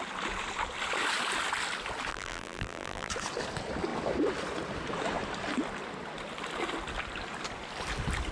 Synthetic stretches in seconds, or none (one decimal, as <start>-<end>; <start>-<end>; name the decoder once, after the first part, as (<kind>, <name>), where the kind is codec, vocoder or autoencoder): 2.1-3.1 (vocoder, BigVGAN v2)